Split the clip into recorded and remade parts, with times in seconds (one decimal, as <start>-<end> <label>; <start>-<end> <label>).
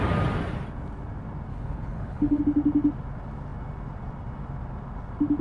0.0-1.5 recorded; 1.5-2.4 remade; 2.4-5.4 recorded